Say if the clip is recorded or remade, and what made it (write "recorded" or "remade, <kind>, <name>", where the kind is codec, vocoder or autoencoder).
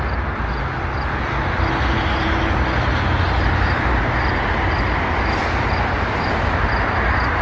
recorded